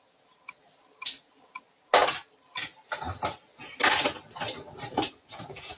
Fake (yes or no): no